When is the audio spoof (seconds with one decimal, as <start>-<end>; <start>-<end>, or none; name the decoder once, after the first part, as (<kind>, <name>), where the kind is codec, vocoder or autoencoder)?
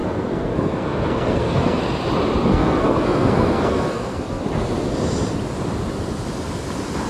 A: 0.0-1.8 (codec, SNAC); 2.5-4.4